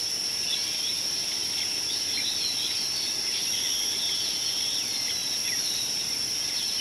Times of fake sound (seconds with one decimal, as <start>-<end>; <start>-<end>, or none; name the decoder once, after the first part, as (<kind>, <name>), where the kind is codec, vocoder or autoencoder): 5.2-5.8 (vocoder, BigVGAN v2)